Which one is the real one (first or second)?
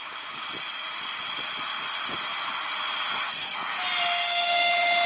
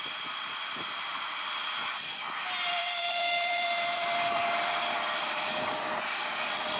first